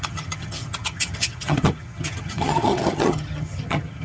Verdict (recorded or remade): remade